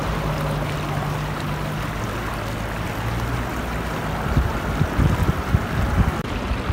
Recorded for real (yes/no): yes